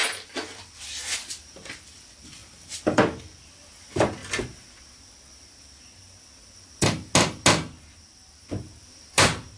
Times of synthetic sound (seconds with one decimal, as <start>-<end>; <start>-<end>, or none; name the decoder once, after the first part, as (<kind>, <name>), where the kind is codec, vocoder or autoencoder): 0.0-4.2 (vocoder, BigVGAN v2); 8.8-9.6